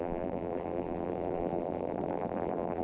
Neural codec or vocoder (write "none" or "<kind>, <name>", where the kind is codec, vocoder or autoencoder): vocoder, BigVGAN v2